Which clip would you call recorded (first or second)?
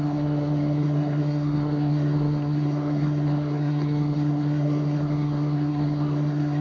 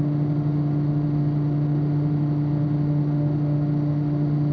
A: second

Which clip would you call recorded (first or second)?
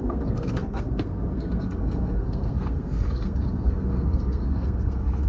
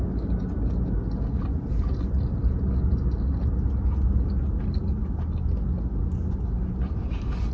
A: second